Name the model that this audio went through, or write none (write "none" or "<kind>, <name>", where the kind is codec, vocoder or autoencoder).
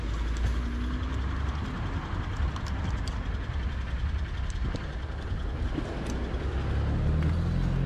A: none